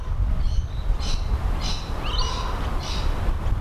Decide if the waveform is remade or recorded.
recorded